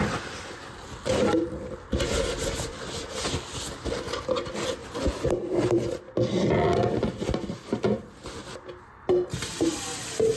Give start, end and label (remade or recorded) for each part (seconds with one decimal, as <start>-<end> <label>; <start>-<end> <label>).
0.0-4.8 recorded; 4.8-6.0 remade; 6.0-10.4 recorded